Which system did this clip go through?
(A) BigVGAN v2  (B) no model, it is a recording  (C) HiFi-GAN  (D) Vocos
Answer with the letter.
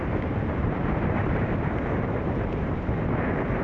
A